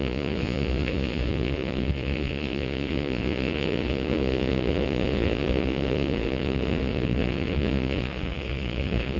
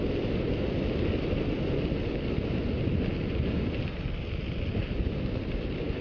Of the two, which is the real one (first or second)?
second